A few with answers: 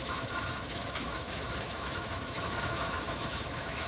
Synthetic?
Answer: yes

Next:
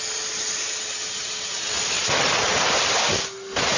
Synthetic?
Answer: no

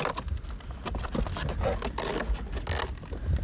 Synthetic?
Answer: no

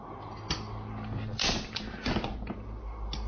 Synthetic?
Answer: no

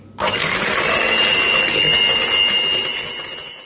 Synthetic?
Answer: no